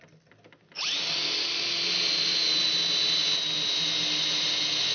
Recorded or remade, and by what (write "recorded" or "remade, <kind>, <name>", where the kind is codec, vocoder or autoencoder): recorded